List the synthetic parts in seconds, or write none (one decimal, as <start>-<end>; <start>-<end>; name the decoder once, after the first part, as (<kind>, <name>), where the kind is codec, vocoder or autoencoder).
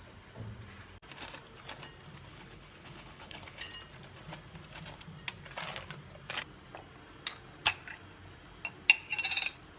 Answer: 2.3-3.7 (codec, HILCodec)